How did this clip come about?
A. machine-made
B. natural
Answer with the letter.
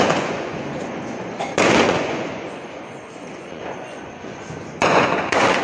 A